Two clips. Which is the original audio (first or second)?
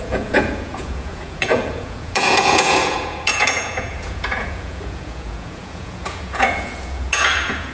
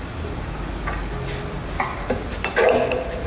second